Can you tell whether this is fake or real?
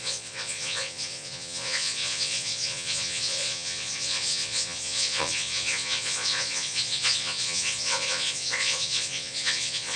fake